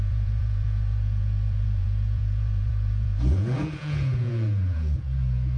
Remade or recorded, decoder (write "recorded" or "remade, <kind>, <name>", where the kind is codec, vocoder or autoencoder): remade, vocoder, Vocos